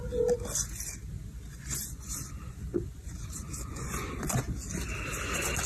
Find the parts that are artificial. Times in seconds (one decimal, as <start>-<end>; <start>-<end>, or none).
1.5-4.5